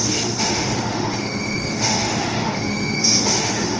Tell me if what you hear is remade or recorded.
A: remade